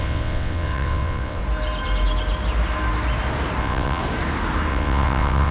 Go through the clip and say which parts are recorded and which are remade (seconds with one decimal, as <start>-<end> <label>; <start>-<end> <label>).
0.0-1.4 remade; 1.4-3.6 recorded; 3.6-4.0 remade; 4.0-4.7 recorded; 4.7-5.5 remade

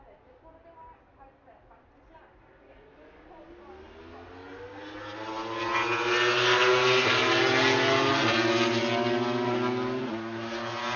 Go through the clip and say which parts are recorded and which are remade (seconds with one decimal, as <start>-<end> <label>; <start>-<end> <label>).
0.0-11.0 recorded

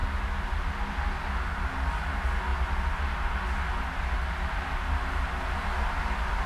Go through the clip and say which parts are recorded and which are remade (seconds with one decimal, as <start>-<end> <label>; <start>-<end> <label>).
0.0-6.5 recorded

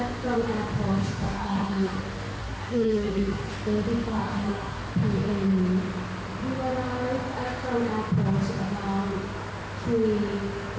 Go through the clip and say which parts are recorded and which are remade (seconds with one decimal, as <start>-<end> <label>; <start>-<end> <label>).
0.0-1.0 recorded; 1.0-2.0 remade; 2.0-2.4 recorded; 2.4-3.5 remade; 3.5-4.1 recorded; 4.1-4.8 remade; 4.8-10.8 recorded

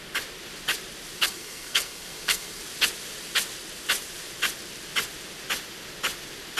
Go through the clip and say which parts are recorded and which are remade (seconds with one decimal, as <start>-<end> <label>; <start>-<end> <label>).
0.0-1.2 recorded; 1.2-2.6 remade; 2.6-6.6 recorded

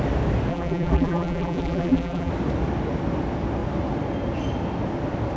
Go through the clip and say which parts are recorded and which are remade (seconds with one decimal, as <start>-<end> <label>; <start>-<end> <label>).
0.0-0.5 recorded; 0.5-2.3 remade; 2.3-5.4 recorded

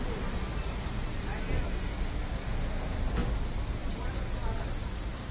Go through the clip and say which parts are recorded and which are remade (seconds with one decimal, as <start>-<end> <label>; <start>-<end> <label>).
0.0-5.3 recorded

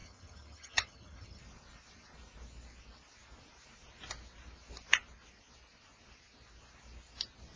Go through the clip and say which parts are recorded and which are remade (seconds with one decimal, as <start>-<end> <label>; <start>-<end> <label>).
0.0-1.4 remade; 1.4-7.6 recorded